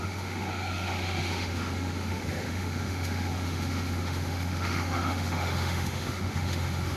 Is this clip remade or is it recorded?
remade